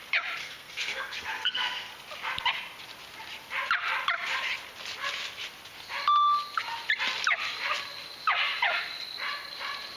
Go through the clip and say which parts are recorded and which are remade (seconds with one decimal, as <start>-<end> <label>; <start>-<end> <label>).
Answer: 0.0-0.4 recorded; 0.4-1.9 remade; 1.9-10.0 recorded